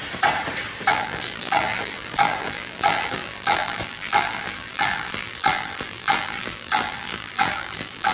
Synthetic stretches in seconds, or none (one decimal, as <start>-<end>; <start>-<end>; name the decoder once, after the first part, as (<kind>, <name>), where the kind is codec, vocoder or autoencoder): 0.9-8.1 (vocoder, BigVGAN v2)

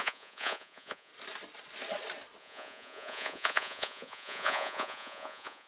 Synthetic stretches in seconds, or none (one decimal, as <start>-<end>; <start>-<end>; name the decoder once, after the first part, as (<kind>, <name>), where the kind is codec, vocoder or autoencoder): 0.0-1.1 (vocoder, Vocos); 2.4-5.7

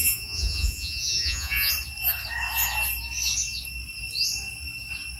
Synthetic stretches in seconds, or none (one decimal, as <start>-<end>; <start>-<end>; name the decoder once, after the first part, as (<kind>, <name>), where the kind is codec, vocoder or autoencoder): 0.0-1.7 (vocoder, Vocos)

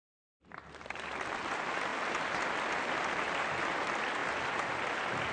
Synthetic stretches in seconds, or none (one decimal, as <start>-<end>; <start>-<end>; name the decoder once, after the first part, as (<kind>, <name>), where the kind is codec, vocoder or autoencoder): 1.9-2.4 (vocoder, BigVGAN v2); 4.2-4.7